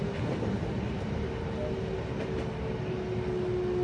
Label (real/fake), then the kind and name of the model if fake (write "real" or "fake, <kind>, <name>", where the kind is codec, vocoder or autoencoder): real